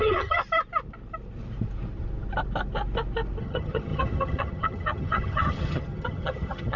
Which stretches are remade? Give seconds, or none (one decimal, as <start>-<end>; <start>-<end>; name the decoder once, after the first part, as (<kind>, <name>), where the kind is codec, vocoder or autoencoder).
0.0-0.4 (vocoder, HiFi-GAN); 3.4-6.8